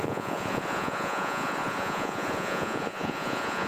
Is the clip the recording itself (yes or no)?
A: no